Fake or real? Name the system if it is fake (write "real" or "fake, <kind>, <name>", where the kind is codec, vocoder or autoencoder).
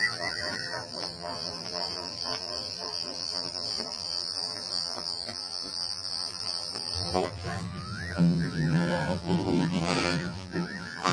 fake, vocoder, BigVGAN v2